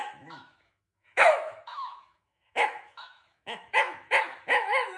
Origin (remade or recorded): remade